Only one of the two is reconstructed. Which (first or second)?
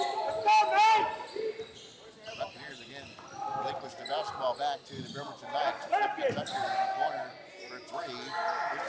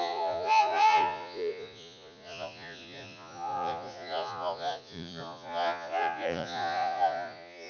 second